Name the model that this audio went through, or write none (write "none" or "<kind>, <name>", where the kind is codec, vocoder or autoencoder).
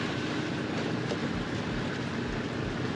none